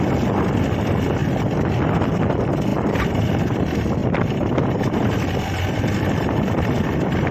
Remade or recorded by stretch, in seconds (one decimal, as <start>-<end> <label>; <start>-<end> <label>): 0.0-2.7 recorded; 2.7-3.3 remade; 3.3-4.0 recorded; 4.0-6.8 remade; 6.8-7.3 recorded